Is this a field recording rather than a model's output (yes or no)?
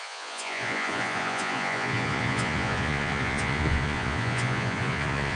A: no